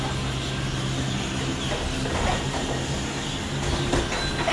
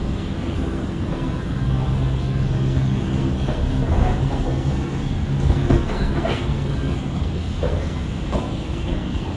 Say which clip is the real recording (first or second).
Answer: first